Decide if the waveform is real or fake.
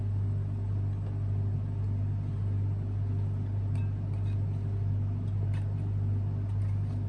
real